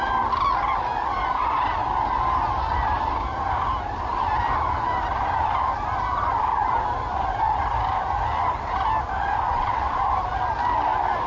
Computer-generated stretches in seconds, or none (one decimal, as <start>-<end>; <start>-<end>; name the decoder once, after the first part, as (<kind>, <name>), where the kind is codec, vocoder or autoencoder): 9.5-10.0 (vocoder, WaveNeXt)